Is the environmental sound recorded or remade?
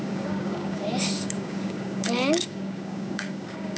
remade